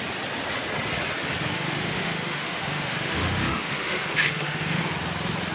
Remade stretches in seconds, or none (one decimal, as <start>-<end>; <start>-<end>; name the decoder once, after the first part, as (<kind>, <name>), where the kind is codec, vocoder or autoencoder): 1.5-4.8 (autoencoder, DAC-VAE)